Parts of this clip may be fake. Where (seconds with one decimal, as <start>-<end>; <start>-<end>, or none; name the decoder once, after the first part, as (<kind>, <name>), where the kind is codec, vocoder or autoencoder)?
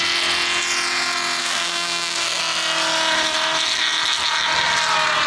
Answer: 1.4-2.4 (codec, SNAC)